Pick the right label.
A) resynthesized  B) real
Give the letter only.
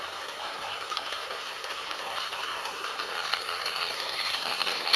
A